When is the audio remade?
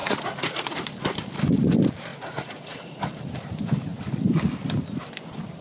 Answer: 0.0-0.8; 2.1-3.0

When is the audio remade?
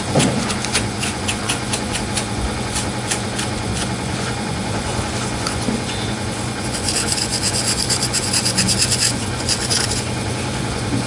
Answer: 0.0-11.1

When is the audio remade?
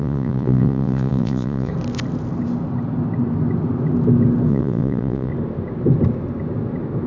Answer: 0.0-1.7; 4.5-5.3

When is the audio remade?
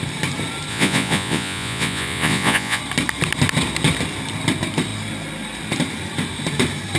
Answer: 0.7-2.8